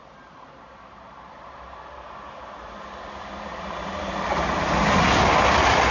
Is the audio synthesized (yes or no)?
no